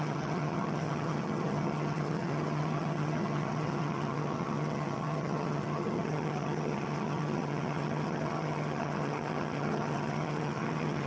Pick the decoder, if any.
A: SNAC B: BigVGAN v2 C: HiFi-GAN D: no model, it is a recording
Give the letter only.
C